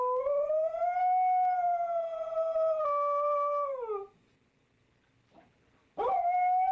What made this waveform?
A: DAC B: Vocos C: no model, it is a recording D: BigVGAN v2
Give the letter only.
C